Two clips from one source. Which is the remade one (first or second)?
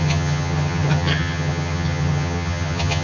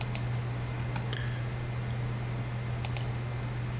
first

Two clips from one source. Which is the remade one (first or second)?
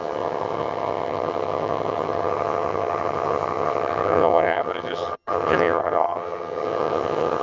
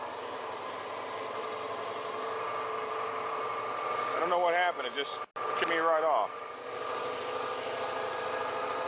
first